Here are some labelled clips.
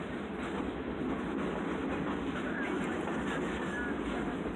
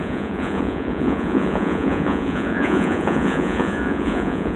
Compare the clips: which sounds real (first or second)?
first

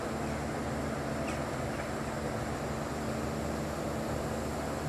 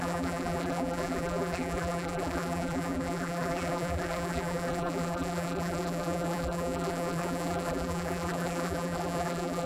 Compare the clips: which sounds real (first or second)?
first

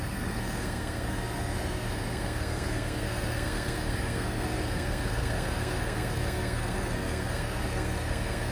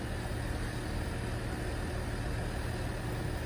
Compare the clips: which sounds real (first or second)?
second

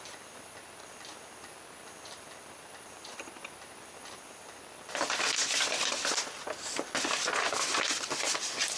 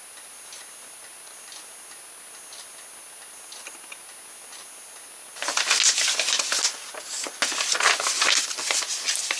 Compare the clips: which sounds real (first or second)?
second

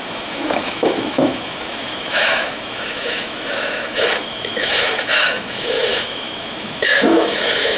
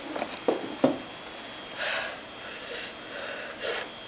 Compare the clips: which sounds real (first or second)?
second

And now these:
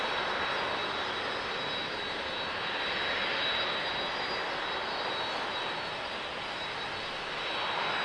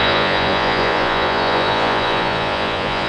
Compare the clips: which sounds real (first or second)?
first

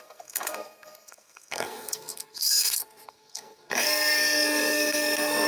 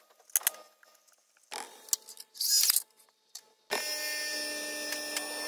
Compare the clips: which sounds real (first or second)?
second